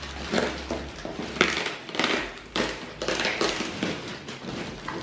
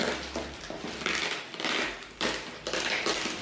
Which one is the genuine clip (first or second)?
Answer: second